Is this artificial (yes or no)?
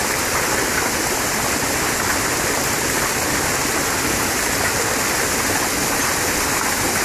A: no